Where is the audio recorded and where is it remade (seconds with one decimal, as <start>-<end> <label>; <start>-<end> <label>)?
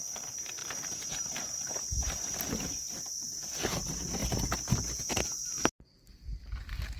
0.0-0.6 recorded; 0.6-2.7 remade; 2.7-7.0 recorded